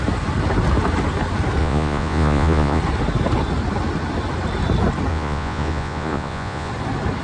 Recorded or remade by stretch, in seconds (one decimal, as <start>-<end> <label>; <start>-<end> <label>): 0.0-1.6 recorded; 1.6-2.8 remade; 2.8-5.1 recorded; 5.1-6.7 remade; 6.7-7.2 recorded